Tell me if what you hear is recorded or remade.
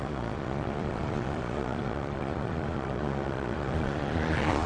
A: remade